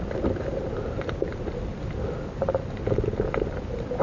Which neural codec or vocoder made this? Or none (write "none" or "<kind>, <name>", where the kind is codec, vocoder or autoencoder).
none